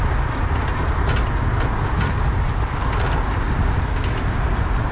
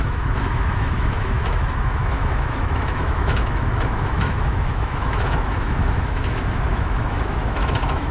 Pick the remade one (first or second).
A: second